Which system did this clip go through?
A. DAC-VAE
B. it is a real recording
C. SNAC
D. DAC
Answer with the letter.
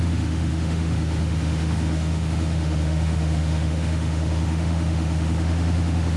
A